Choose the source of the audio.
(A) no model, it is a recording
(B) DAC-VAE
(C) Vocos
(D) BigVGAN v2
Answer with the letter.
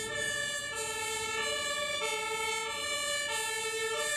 A